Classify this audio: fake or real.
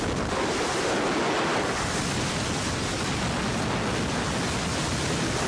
real